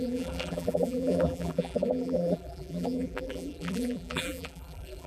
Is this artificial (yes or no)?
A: yes